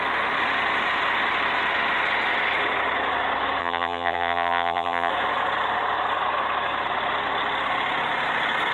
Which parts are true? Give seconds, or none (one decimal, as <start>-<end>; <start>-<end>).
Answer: 0.0-3.6; 5.1-8.7